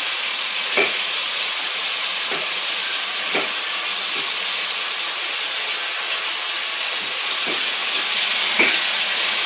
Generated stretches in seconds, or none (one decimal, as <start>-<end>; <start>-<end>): 0.0-2.8; 6.9-7.8; 8.6-9.5